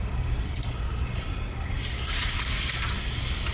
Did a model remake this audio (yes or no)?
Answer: no